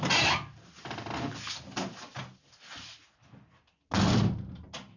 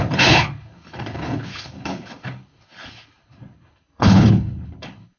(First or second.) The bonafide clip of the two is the first